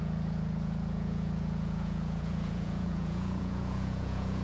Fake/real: fake